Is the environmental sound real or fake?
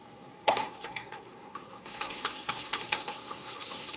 fake